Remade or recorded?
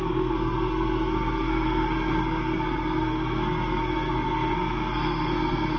remade